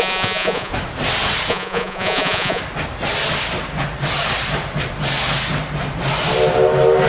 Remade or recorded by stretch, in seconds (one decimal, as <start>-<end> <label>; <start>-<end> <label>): 0.0-0.7 remade; 0.7-1.5 recorded; 1.5-2.6 remade; 2.6-7.1 recorded